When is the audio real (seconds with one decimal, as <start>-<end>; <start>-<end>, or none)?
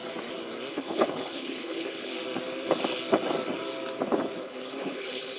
0.0-0.7; 2.1-4.4